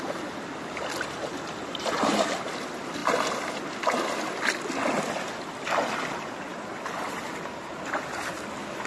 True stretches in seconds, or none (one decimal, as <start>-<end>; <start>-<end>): 0.0-8.9

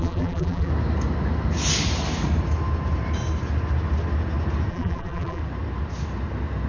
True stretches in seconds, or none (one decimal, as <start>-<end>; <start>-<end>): 0.7-4.7; 5.4-6.7

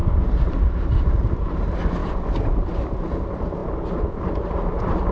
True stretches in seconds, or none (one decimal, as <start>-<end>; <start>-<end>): 1.3-2.0; 2.7-3.6

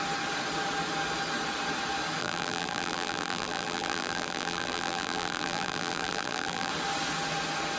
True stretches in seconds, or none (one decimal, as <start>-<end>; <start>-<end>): 0.0-2.2; 6.7-7.8

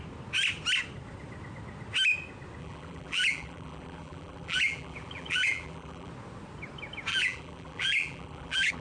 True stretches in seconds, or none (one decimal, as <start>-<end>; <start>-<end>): 0.0-2.6; 6.1-7.1

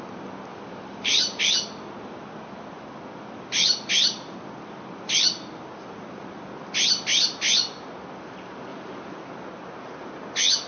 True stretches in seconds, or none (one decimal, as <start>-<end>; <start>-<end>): 0.0-0.5; 1.4-8.7; 9.3-10.7

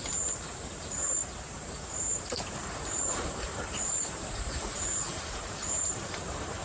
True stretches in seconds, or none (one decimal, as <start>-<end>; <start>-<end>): none

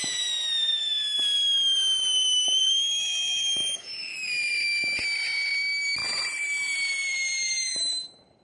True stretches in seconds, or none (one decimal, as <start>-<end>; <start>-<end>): 0.0-6.0